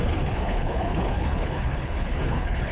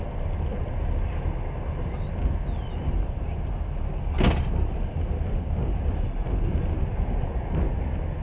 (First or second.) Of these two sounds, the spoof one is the first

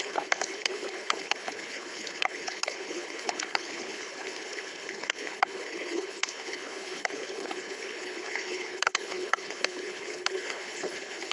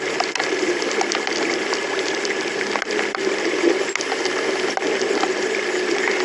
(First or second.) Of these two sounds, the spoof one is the first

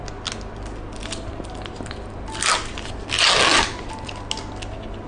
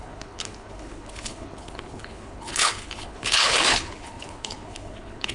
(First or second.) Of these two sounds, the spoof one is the second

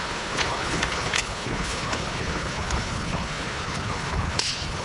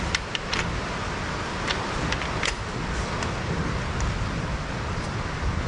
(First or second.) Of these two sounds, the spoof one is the first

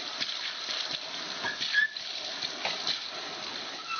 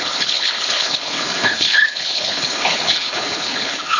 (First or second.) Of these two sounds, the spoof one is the second